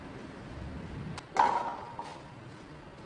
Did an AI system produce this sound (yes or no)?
no